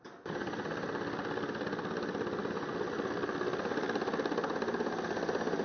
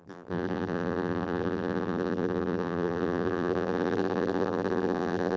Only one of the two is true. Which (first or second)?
first